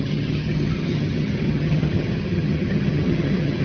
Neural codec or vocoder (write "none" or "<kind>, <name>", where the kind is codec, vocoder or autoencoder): vocoder, HiFi-GAN